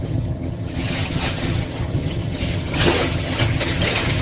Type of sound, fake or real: fake